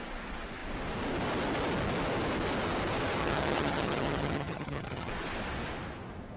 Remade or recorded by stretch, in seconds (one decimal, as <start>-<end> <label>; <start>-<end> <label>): 0.0-3.2 recorded; 3.2-5.1 remade; 5.1-6.4 recorded